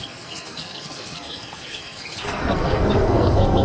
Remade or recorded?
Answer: remade